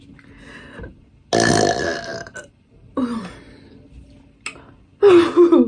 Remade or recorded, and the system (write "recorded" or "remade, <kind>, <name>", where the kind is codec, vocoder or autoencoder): recorded